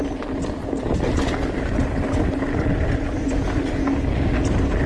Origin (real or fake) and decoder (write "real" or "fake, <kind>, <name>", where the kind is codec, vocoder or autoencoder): real